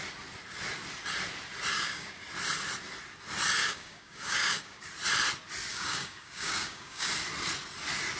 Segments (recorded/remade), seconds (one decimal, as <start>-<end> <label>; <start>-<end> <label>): 0.0-1.7 recorded; 1.7-2.2 remade; 2.2-3.6 recorded; 3.6-4.9 remade; 4.9-5.7 recorded; 5.7-7.1 remade; 7.1-8.2 recorded